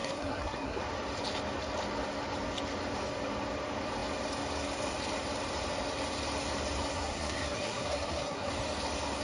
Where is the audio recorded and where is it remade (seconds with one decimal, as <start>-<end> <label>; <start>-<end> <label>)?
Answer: 0.0-0.8 remade; 0.8-6.9 recorded; 6.9-8.5 remade; 8.5-9.2 recorded